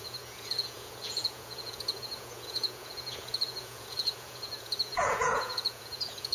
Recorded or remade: remade